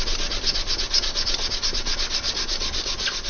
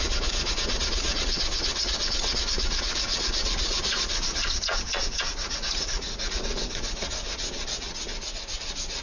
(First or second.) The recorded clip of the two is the first